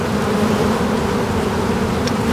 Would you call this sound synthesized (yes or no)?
no